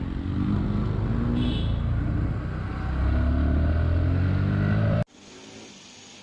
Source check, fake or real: real